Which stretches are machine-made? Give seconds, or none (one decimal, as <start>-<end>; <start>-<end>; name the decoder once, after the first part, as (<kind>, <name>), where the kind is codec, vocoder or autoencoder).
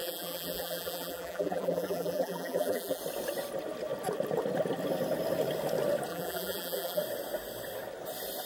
0.0-3.0 (vocoder, BigVGAN v2); 6.1-7.0